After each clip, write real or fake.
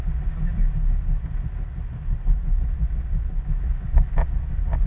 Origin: real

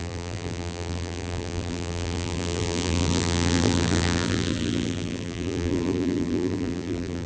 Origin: fake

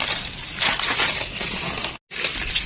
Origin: real